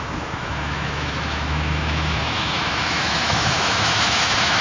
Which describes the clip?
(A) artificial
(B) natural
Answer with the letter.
A